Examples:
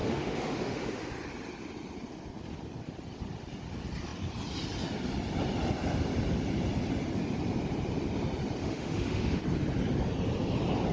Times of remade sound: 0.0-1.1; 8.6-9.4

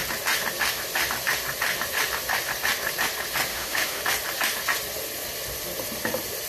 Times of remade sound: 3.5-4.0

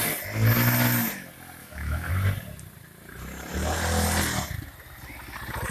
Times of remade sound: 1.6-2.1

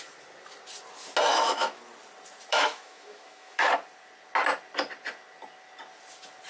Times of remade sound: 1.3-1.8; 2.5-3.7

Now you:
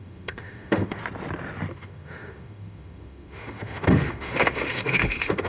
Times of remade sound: 0.0-1.0; 1.7-5.5